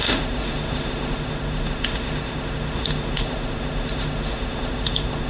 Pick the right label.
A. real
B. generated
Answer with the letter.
B